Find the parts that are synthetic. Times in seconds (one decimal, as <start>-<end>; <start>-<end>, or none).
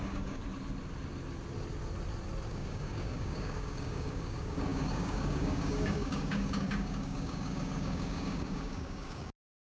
0.0-0.4; 2.5-9.6